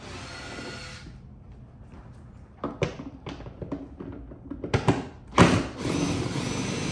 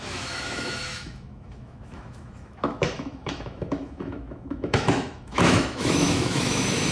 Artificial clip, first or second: second